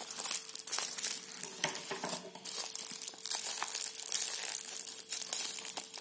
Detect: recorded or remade recorded